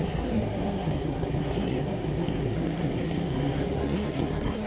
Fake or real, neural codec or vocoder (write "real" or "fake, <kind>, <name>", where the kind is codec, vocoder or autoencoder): fake, codec, SNAC